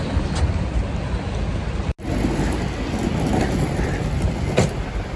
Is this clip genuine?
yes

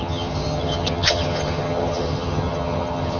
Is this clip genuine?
no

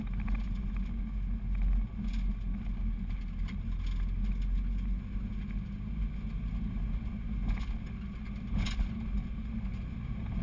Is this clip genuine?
yes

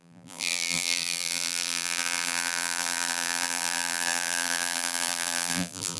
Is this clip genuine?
no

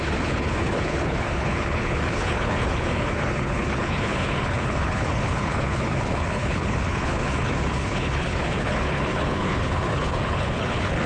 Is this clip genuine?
no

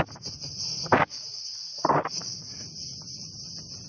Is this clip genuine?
yes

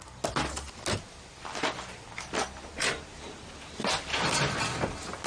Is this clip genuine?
yes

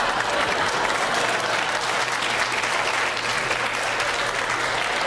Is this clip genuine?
yes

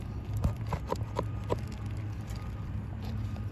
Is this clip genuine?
no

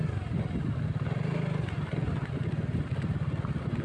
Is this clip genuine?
yes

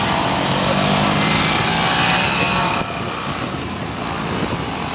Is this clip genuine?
yes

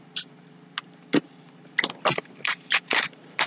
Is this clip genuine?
yes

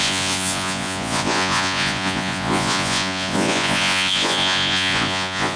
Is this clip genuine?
no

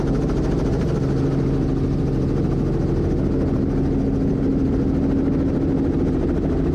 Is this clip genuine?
yes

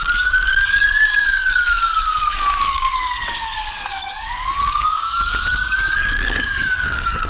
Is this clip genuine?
no